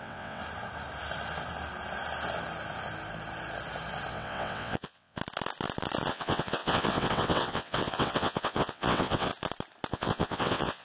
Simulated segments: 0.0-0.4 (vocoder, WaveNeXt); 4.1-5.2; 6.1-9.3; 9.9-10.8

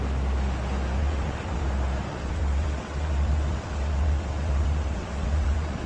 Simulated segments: 1.0-1.6 (vocoder, WaveNeXt); 2.1-5.9

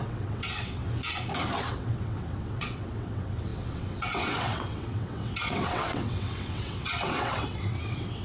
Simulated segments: 0.0-0.8 (vocoder, WaveNeXt); 1.7-8.2

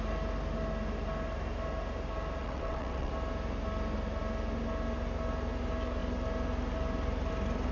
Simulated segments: 2.4-3.1 (vocoder, WaveNeXt)